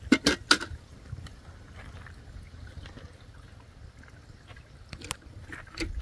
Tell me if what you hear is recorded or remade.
recorded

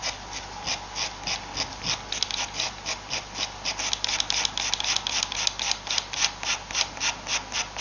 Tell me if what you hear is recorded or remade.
recorded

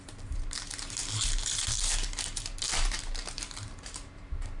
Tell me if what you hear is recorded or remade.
remade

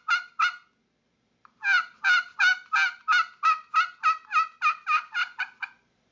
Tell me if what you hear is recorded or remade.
recorded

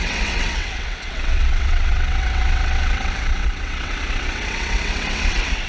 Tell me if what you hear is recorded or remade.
remade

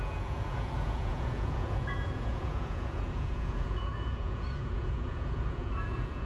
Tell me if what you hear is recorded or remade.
remade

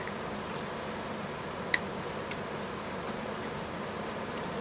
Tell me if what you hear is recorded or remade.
recorded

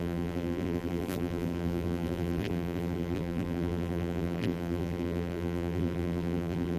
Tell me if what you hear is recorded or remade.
remade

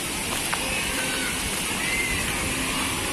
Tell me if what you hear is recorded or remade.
recorded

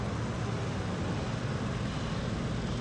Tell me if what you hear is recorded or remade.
recorded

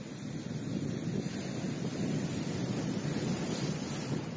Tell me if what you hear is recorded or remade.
recorded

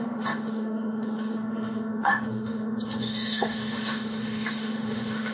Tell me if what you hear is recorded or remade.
remade